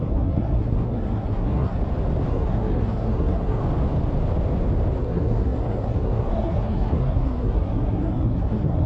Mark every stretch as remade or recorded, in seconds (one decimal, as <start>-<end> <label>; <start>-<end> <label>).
0.0-1.8 remade; 1.8-2.3 recorded; 2.3-3.6 remade; 3.6-5.0 recorded; 5.0-8.9 remade